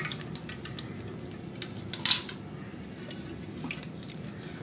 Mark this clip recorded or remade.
recorded